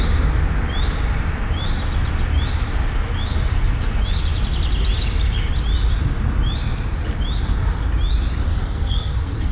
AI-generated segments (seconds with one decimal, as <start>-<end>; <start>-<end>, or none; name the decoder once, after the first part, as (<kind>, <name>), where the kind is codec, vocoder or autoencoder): 8.5-9.5 (codec, SNAC)